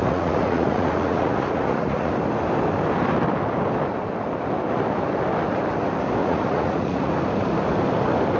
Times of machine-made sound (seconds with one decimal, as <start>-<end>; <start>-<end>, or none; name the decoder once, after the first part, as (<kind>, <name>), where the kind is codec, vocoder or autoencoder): 0.0-2.1 (vocoder, Vocos); 6.2-7.1